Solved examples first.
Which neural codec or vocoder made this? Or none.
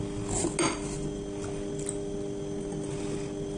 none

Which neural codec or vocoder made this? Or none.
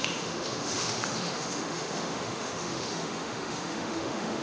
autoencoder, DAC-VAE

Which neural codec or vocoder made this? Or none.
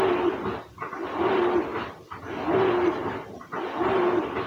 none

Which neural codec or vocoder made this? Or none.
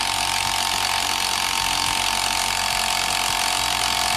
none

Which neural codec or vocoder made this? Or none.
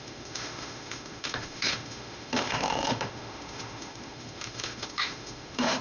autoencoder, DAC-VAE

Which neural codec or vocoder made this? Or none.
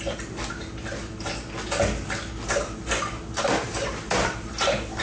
none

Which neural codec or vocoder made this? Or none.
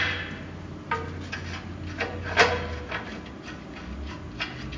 none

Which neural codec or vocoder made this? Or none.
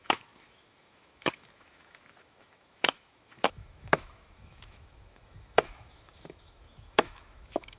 autoencoder, DAC-VAE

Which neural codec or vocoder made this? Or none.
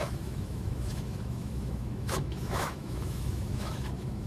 autoencoder, DAC-VAE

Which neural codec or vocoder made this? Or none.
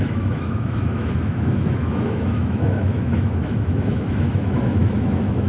autoencoder, DAC-VAE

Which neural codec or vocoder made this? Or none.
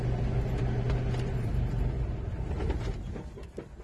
none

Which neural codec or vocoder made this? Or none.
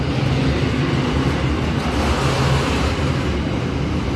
none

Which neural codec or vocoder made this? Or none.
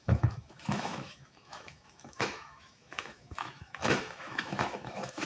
autoencoder, DAC-VAE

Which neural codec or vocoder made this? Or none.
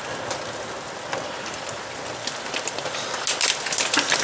none